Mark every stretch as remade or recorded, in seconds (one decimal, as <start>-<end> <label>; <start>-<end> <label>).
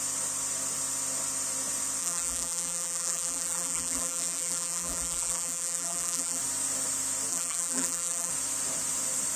0.0-2.0 recorded; 2.0-6.4 remade; 6.4-7.3 recorded; 7.3-8.3 remade; 8.3-9.4 recorded